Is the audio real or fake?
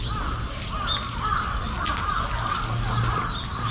real